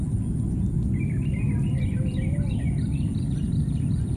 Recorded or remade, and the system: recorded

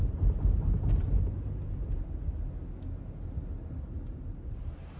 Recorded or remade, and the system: recorded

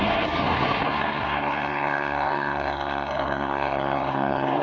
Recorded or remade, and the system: remade, codec, SNAC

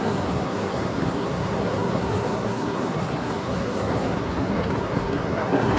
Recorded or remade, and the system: remade, codec, SNAC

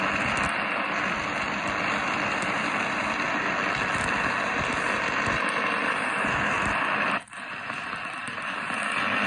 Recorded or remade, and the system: recorded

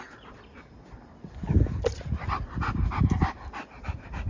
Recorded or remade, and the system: recorded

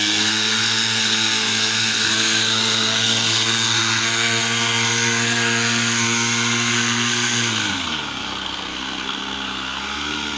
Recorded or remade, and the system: remade, codec, SNAC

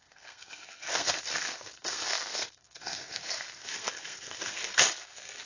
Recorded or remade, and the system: remade, codec, SNAC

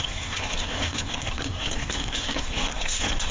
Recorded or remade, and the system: remade, codec, SNAC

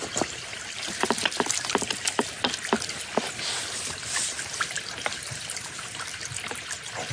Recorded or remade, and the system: recorded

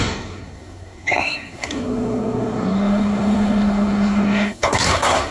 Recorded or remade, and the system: remade, codec, SNAC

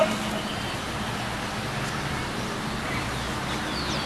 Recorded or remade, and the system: recorded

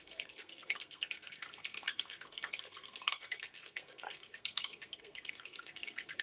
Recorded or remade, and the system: remade, codec, SNAC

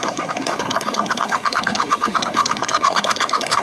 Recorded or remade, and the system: remade, codec, SNAC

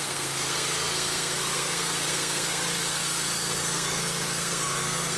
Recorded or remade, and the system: remade, codec, SNAC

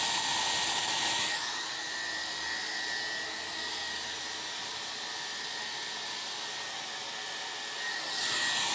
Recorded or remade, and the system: recorded